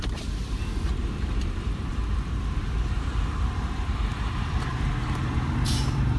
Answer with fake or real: fake